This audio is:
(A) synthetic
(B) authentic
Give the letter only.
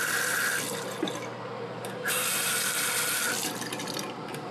B